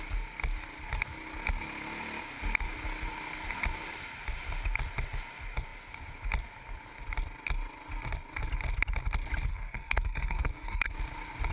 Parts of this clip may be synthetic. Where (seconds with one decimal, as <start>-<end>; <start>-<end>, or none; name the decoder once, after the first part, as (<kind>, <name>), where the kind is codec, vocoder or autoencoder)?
9.5-10.9 (codec, SNAC)